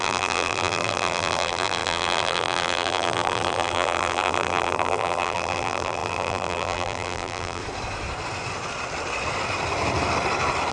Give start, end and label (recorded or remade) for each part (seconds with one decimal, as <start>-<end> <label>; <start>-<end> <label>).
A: 0.0-7.6 remade; 7.6-10.7 recorded